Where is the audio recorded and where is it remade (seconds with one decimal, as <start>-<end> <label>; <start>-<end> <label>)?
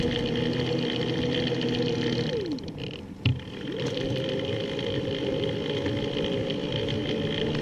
0.0-7.6 recorded